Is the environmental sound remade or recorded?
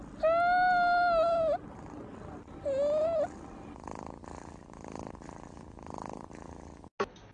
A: recorded